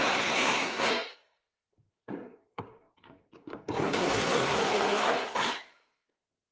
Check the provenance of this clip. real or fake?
fake